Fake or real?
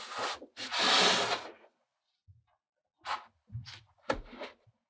real